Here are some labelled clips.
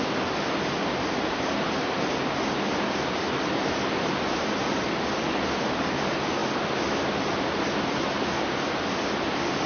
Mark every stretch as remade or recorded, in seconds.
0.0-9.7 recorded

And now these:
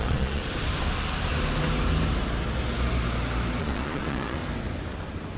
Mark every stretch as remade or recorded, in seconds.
0.0-0.4 remade; 0.4-3.6 recorded; 3.6-4.4 remade; 4.4-5.4 recorded

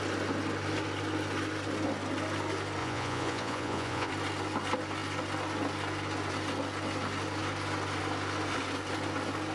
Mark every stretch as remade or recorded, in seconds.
0.0-2.8 recorded; 2.8-4.1 remade; 4.1-9.5 recorded

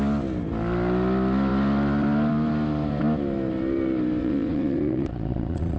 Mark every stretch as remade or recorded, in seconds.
0.0-4.2 recorded; 4.2-5.8 remade

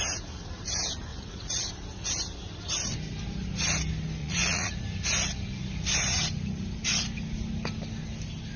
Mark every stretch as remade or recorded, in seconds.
0.0-1.1 recorded; 1.1-1.7 remade; 1.7-4.2 recorded; 4.2-4.8 remade; 4.8-8.6 recorded

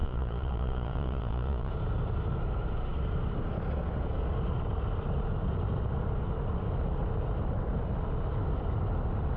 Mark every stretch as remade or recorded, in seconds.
0.0-1.7 remade; 1.7-9.4 recorded

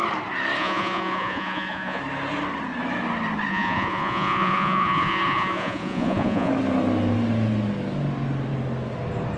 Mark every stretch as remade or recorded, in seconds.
0.0-0.6 recorded; 0.6-2.0 remade; 2.0-3.5 recorded; 3.5-6.5 remade; 6.5-9.4 recorded